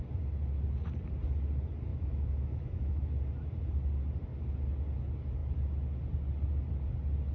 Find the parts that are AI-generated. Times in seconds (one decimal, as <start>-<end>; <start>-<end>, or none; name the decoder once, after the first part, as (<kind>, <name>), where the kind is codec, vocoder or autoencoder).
1.9-3.1 (autoencoder, DAC-VAE)